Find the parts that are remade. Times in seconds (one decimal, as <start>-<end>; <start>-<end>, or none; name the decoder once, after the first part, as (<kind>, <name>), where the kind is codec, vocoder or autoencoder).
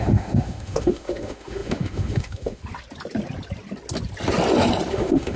0.0-2.6 (autoencoder, DAC-VAE); 4.9-5.4